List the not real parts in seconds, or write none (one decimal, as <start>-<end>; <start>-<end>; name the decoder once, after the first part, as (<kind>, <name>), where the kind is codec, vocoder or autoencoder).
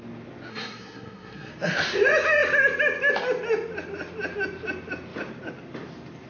0.5-1.5 (codec, SNAC)